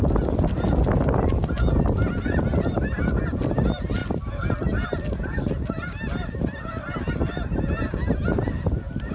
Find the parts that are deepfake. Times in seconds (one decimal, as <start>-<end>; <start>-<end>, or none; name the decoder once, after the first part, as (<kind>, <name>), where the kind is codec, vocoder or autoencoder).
none